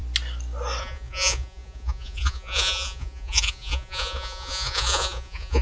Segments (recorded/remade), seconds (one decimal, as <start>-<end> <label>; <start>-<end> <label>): 0.0-0.8 recorded; 0.8-5.6 remade